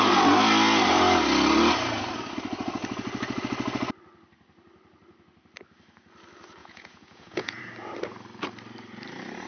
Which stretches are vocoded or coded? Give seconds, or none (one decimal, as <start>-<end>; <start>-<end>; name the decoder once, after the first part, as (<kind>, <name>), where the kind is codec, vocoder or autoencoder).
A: 6.6-7.6 (vocoder, Vocos)